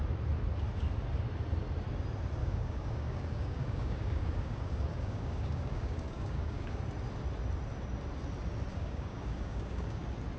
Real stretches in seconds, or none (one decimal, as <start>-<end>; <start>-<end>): 0.0-2.4; 6.8-8.7; 10.0-10.4